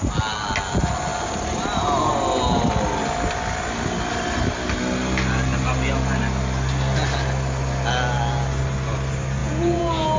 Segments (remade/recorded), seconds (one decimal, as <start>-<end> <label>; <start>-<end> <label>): 0.0-9.4 recorded; 9.4-10.2 remade